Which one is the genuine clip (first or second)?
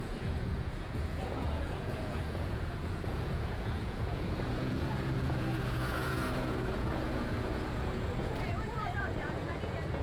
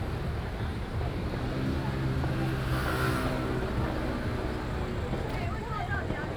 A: second